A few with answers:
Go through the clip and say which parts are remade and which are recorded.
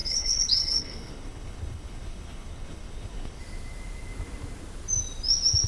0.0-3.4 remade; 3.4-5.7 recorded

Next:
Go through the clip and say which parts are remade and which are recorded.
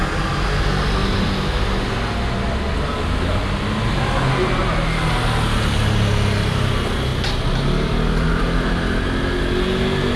0.0-10.2 recorded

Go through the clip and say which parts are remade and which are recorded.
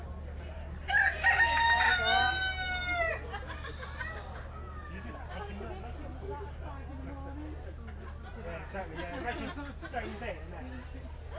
0.0-11.4 recorded